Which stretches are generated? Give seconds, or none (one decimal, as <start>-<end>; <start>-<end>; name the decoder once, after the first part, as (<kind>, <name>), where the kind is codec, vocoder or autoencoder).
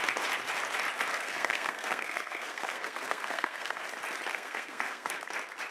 1.1-3.8 (codec, SNAC); 4.3-5.2